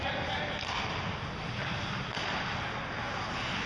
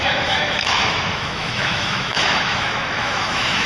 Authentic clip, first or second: first